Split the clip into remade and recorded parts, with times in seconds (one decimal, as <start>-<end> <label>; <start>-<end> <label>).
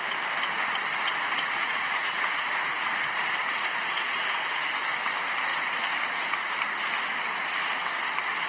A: 0.0-0.9 recorded; 0.9-4.6 remade; 4.6-8.5 recorded